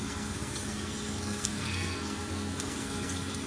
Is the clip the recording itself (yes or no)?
no